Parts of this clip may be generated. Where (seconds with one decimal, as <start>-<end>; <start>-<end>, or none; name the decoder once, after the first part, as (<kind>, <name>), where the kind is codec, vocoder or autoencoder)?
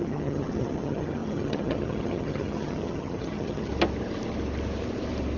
0.0-3.7 (vocoder, HiFi-GAN)